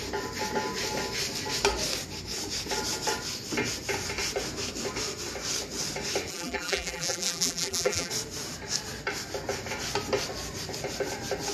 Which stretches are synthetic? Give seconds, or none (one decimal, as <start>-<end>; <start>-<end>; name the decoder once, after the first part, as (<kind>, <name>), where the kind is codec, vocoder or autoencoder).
6.3-8.1 (vocoder, BigVGAN v2)